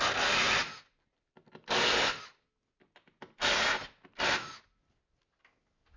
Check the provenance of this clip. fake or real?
real